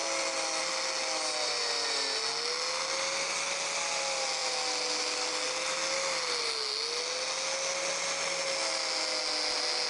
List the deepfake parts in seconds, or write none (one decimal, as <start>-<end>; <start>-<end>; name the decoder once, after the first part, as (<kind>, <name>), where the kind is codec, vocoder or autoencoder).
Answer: none